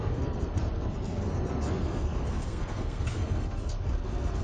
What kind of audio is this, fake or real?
fake